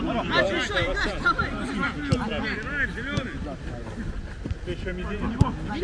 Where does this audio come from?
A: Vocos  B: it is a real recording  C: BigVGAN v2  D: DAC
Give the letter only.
B